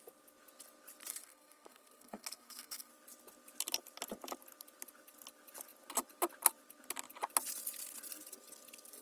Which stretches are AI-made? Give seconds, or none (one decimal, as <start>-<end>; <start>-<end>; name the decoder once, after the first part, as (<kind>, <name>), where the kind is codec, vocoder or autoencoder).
1.1-2.9 (codec, SNAC)